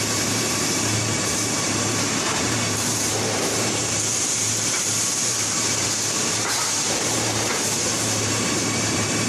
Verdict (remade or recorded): remade